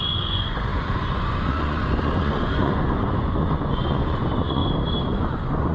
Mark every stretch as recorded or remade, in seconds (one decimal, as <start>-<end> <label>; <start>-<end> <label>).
0.0-4.6 remade; 4.6-5.2 recorded; 5.2-5.7 remade